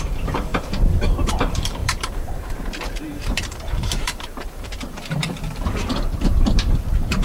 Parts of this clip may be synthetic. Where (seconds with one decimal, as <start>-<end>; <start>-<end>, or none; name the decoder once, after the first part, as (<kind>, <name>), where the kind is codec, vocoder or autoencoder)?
0.0-7.2 (vocoder, BigVGAN v2)